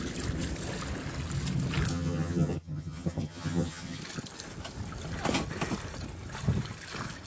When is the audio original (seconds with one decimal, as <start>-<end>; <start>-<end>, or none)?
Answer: 0.0-1.9; 4.0-7.3

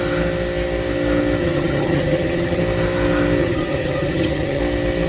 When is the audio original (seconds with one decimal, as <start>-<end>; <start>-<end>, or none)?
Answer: 0.0-1.4; 2.6-3.4; 4.6-5.1

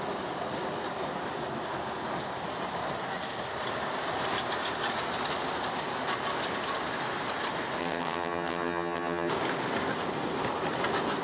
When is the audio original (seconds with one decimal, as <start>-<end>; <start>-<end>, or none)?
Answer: 0.0-7.8; 9.3-11.2

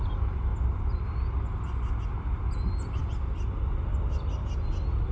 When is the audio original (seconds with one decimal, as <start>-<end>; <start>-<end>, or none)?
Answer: 0.0-5.1